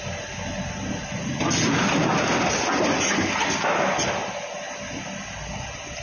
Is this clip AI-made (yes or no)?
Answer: no